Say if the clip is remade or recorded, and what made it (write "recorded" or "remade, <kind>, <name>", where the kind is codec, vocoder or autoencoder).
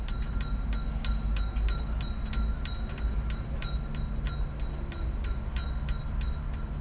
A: recorded